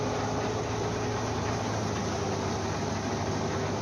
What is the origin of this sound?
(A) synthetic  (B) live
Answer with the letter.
B